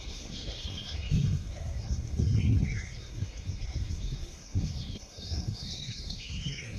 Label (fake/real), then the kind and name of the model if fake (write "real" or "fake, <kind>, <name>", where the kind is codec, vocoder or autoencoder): fake, codec, SNAC